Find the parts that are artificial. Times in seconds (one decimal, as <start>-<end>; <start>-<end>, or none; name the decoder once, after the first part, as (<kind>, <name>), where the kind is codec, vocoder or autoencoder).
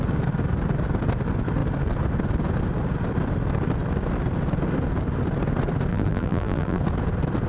5.9-6.8 (vocoder, BigVGAN v2)